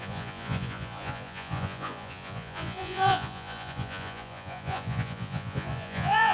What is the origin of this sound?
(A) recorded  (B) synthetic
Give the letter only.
B